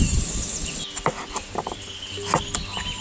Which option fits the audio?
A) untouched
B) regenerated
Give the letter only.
A